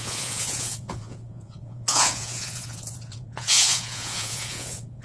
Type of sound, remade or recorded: remade